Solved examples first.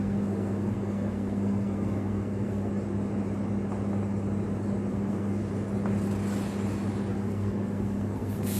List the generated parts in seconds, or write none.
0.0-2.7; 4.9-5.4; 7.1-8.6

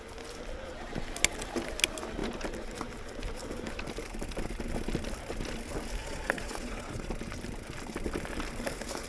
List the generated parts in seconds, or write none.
6.0-7.1

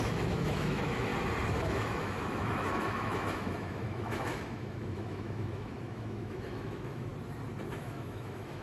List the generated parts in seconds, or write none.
0.0-1.1; 1.6-7.1; 7.8-8.6

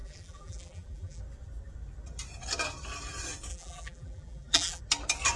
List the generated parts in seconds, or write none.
0.0-1.2; 3.5-4.8

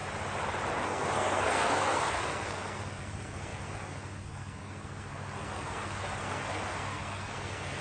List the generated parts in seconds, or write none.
0.8-7.8

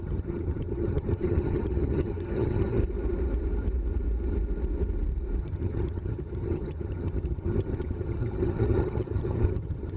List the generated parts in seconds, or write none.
0.0-2.8; 5.4-10.0

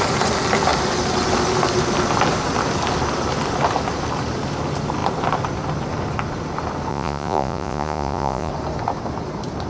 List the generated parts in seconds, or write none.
6.9-8.5